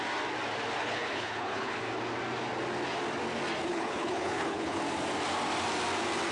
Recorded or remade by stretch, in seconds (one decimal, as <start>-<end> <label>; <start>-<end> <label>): 0.0-0.8 recorded; 0.8-1.8 remade; 1.8-3.7 recorded; 3.7-4.8 remade; 4.8-6.3 recorded